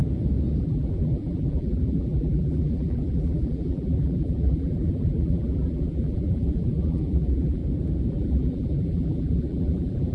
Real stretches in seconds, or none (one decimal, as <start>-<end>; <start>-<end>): 0.0-0.6; 7.6-8.1